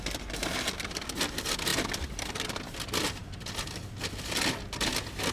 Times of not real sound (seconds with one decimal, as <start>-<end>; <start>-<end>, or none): none